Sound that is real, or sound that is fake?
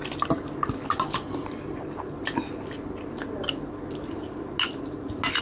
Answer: real